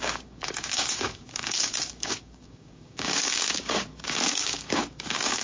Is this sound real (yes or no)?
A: no